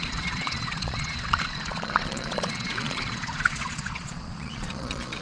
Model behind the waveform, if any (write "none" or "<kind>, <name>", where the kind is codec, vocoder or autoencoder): vocoder, Vocos